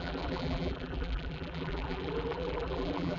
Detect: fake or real fake